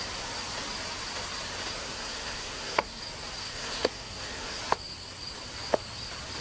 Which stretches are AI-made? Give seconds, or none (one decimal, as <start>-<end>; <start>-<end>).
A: 1.8-3.0; 3.4-4.6